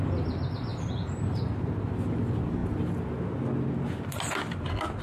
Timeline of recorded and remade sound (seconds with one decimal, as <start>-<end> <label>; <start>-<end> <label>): 0.0-0.7 recorded; 0.7-1.6 remade; 1.6-5.0 recorded